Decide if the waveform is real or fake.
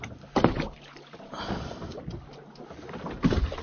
real